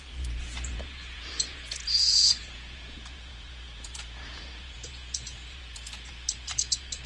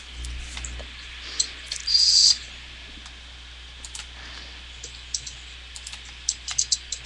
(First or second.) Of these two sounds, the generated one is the first